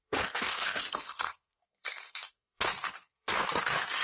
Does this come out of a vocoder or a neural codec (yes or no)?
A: yes